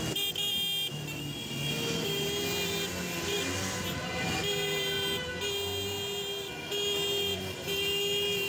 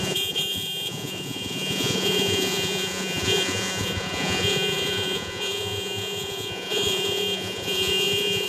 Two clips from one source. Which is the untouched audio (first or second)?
first